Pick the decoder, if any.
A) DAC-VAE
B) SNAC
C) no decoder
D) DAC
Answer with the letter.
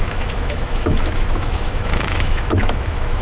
A